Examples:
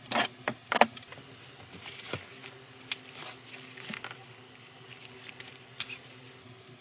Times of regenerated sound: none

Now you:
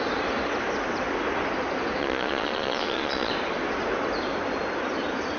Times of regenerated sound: 2.0-3.3

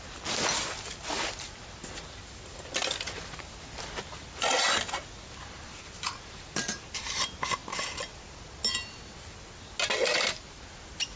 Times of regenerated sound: none

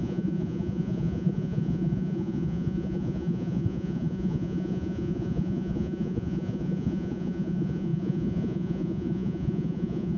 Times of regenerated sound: 0.0-10.2

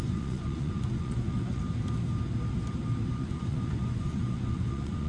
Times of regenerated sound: 0.0-1.6; 3.1-5.1